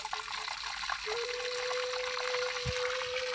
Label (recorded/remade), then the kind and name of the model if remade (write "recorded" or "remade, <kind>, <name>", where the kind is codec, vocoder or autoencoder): recorded